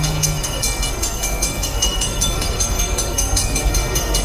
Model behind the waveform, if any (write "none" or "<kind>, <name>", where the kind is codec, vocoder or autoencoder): codec, SNAC